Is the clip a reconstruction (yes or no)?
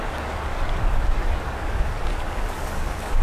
yes